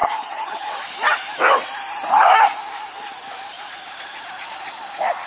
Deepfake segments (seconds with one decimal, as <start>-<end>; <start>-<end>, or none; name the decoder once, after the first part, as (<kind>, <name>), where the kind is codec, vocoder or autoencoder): 0.0-0.7 (vocoder, HiFi-GAN)